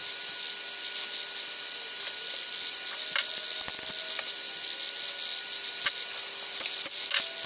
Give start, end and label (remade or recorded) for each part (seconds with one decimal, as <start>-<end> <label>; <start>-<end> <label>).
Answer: 0.0-7.5 recorded